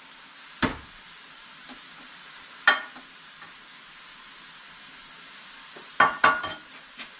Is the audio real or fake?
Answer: real